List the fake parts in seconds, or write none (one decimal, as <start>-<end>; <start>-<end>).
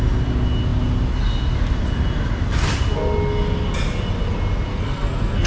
4.7-5.5